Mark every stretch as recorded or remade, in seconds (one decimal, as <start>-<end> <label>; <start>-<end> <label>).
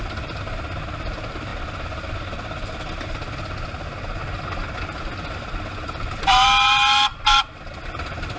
0.0-8.4 recorded